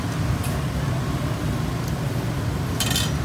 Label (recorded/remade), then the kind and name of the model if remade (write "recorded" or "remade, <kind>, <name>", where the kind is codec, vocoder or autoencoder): recorded